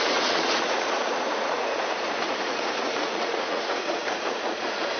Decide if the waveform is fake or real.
fake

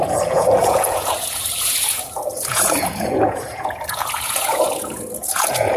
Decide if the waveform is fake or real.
fake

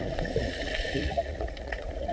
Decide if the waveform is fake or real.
fake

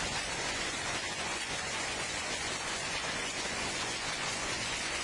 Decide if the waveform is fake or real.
fake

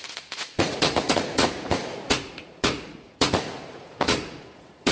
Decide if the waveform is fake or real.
fake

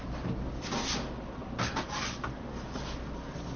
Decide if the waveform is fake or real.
real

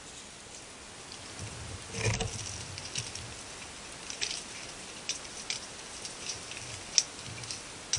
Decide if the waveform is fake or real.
real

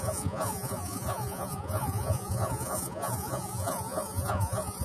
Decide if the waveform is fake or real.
fake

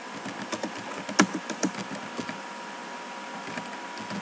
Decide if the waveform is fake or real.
real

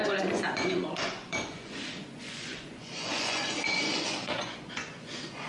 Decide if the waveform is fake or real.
fake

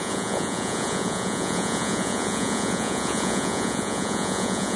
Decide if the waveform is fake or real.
fake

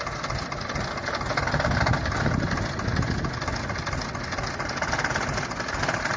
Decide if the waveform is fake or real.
real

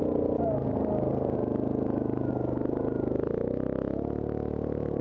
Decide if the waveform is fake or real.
real